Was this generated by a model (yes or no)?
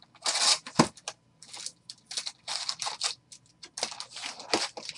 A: no